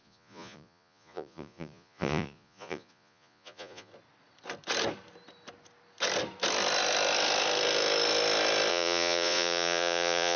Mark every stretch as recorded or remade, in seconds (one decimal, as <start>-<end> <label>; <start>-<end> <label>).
0.0-3.9 remade; 3.9-8.7 recorded; 8.7-10.4 remade